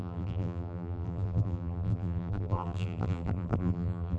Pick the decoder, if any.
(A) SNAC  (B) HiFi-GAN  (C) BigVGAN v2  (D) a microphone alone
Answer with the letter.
C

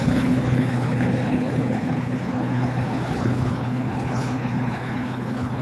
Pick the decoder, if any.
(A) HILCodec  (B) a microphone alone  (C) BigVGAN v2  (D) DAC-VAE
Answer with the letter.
A